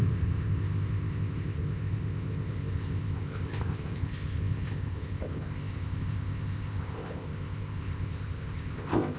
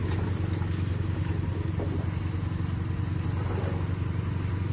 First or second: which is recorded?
second